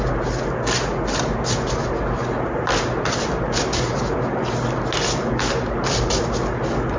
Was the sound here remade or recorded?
recorded